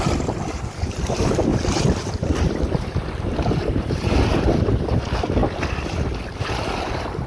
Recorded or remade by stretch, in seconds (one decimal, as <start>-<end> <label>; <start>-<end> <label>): 0.0-7.3 recorded